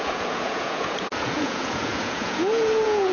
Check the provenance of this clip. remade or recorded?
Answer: remade